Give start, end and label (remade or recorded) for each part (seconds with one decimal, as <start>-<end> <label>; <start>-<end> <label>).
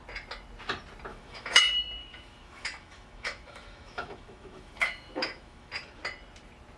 0.0-1.1 recorded; 1.1-1.6 remade; 1.6-2.0 recorded; 2.0-5.7 remade; 5.7-6.8 recorded